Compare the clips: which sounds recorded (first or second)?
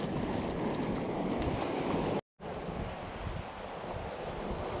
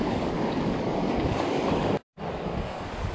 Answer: first